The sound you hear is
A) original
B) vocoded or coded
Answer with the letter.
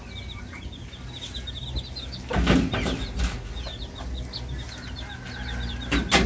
A